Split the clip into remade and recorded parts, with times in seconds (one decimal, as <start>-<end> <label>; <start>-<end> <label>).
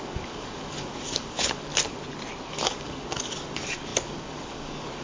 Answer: 0.0-1.7 remade; 1.7-2.5 recorded; 2.5-5.0 remade